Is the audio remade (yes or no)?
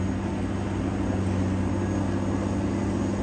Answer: no